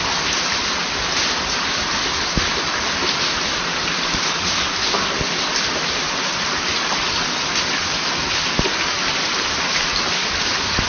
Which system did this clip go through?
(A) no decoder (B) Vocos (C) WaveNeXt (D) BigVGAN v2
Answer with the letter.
A